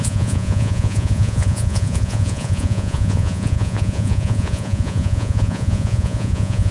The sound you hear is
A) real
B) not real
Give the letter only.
B